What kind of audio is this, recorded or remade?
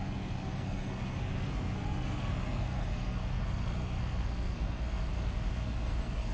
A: remade